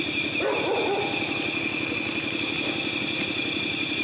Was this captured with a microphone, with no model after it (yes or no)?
yes